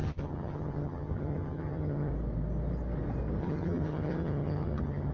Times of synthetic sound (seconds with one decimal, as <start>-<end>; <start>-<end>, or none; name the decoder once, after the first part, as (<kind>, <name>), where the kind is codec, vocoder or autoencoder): 0.0-2.1 (vocoder, HiFi-GAN); 3.4-5.1